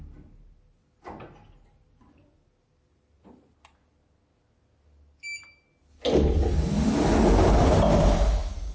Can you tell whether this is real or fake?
real